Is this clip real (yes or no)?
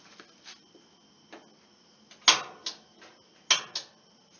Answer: yes